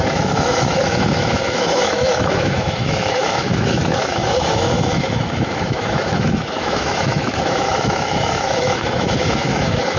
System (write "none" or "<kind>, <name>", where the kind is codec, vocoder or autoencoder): autoencoder, DAC-VAE